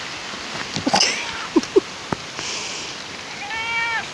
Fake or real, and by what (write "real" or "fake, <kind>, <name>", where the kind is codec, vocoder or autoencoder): real